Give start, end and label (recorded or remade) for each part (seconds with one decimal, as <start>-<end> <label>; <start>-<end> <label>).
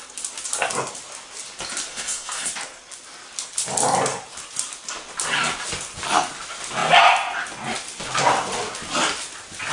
0.0-1.9 recorded; 1.9-2.5 remade; 2.5-9.7 recorded